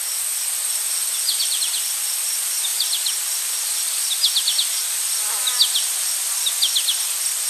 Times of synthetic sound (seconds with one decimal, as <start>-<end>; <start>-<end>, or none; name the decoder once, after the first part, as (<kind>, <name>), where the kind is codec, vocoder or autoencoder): none